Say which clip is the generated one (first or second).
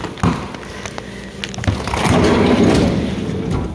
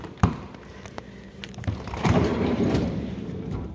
second